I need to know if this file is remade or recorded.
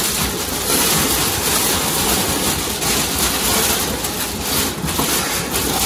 recorded